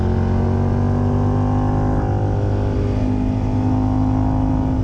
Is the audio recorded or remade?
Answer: recorded